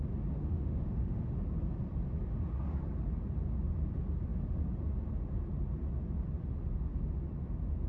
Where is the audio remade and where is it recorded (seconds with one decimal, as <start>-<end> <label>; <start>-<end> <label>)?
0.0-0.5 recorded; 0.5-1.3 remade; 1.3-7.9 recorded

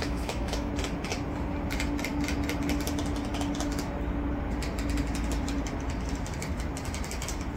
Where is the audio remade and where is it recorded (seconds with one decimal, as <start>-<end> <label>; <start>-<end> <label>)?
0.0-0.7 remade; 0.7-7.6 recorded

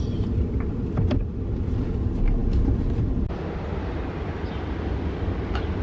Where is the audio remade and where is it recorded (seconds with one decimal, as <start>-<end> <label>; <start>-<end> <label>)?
0.0-5.8 recorded